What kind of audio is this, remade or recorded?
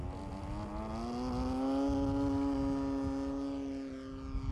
recorded